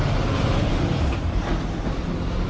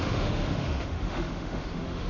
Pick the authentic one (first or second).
first